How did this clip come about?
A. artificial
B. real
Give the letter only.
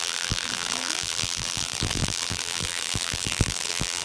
A